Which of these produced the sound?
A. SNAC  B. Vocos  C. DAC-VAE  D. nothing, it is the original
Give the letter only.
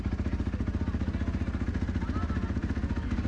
D